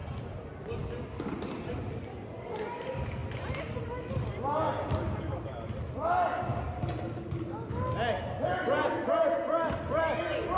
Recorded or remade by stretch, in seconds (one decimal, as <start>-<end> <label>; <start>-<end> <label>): 0.0-10.6 recorded